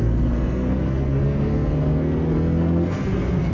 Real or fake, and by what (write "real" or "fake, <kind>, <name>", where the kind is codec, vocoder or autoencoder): fake, codec, SNAC